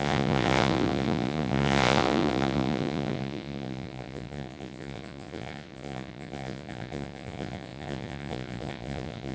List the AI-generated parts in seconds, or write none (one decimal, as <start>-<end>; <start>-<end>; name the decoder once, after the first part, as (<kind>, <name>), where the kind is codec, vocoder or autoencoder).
0.0-9.3 (vocoder, Vocos)